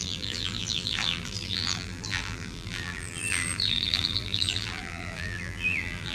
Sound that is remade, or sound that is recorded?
remade